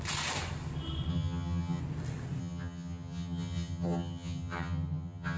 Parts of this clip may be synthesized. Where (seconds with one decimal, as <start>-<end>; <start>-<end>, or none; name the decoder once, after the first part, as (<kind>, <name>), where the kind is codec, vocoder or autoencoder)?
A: 1.1-1.8 (vocoder, HiFi-GAN); 2.4-5.4